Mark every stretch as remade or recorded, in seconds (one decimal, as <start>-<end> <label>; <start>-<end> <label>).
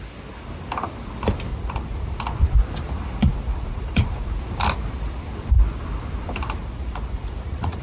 0.0-1.5 recorded; 1.5-2.2 remade; 2.2-3.2 recorded; 3.2-4.4 remade; 4.4-6.6 recorded; 6.6-7.8 remade